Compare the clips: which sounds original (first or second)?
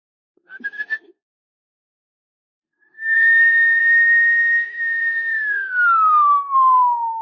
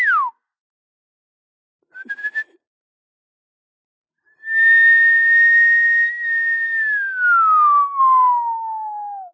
second